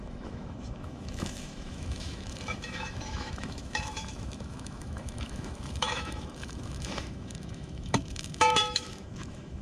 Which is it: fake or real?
fake